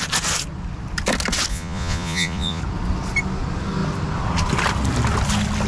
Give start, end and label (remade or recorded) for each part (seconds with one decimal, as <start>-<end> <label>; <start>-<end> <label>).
0.0-1.5 recorded; 1.5-2.6 remade; 2.6-5.7 recorded